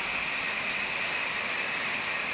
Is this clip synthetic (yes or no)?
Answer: no